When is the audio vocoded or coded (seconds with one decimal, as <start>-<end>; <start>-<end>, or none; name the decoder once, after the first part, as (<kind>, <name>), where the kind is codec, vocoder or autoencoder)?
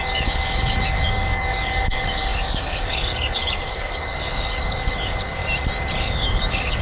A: 0.0-5.4 (codec, DAC); 6.0-6.8